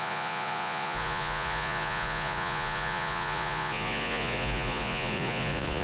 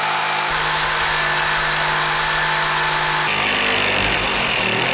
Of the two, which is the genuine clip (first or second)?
second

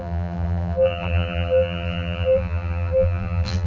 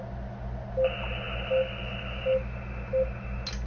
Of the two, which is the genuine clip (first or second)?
second